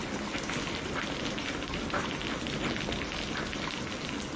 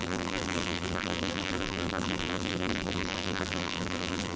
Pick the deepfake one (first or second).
second